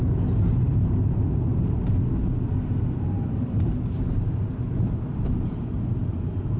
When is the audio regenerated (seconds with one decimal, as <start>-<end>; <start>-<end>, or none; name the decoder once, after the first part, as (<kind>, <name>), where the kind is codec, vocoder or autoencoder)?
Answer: none